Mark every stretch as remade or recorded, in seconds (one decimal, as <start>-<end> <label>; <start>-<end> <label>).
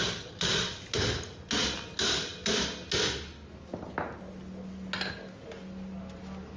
0.0-6.6 recorded